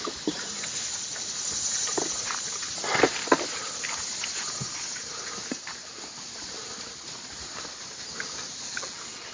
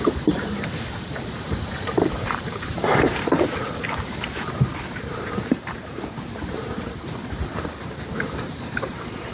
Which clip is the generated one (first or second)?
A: second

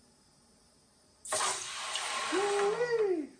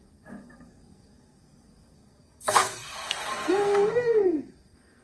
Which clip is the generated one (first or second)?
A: second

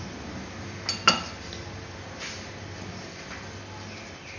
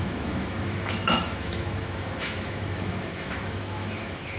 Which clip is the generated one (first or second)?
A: second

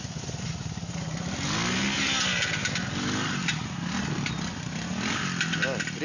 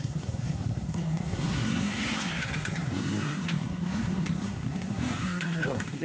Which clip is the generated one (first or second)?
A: second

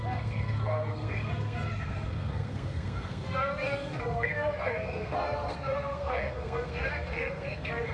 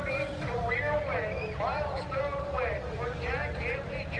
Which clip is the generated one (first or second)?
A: first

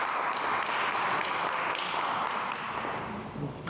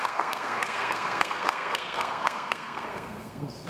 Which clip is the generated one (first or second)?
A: second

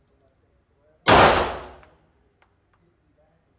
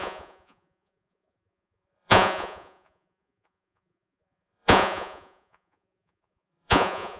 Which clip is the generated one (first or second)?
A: second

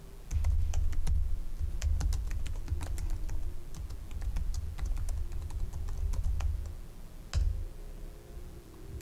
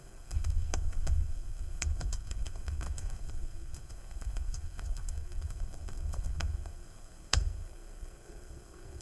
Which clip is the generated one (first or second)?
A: second